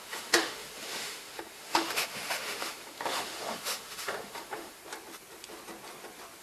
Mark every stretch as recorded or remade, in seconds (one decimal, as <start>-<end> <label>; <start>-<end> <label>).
0.0-4.8 remade; 4.8-6.4 recorded